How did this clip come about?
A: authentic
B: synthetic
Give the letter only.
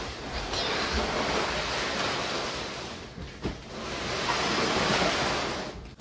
A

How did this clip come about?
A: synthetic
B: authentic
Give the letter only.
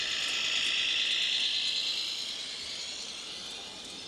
B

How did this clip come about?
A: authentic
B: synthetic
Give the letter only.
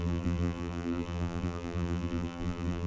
B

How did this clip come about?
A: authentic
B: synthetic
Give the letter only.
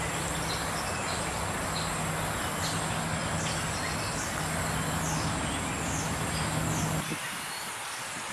A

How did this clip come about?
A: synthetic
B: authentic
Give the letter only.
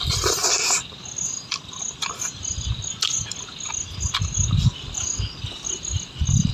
B